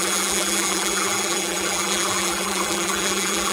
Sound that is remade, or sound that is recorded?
remade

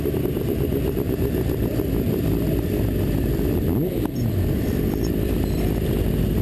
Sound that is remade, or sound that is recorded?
remade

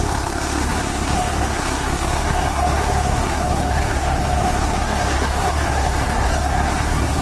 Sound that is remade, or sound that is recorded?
remade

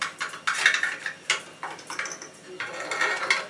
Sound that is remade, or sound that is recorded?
recorded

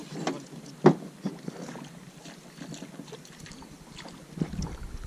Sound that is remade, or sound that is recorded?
recorded